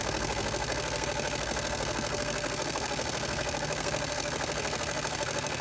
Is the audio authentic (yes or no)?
no